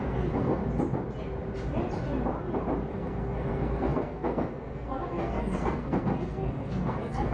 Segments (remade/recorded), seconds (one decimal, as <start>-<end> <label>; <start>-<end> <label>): 0.0-0.6 remade; 0.6-2.9 recorded; 2.9-7.3 remade